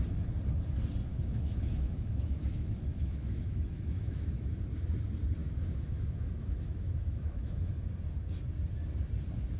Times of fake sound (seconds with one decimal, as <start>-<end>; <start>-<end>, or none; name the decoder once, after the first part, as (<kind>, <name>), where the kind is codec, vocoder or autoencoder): 1.1-4.5 (autoencoder, DAC-VAE); 5.4-7.7